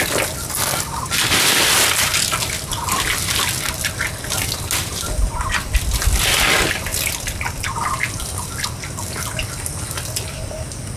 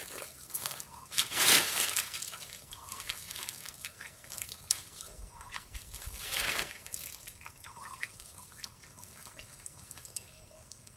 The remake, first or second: second